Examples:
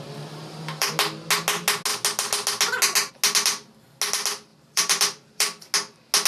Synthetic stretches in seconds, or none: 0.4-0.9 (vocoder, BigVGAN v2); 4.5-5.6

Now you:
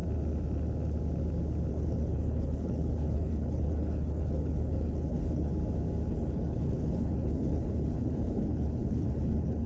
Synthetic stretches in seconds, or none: 1.7-5.5 (codec, HILCodec); 6.1-9.7

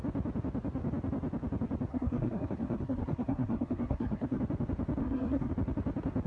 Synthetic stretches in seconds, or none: 1.9-4.4 (codec, SNAC); 5.0-5.5

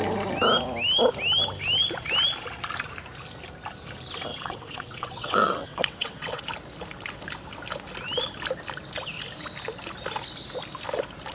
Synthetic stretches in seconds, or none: 4.3-6.4 (vocoder, WaveNeXt)

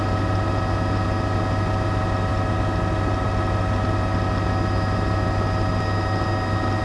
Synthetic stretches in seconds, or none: none